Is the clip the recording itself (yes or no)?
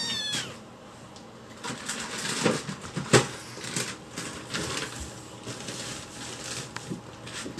yes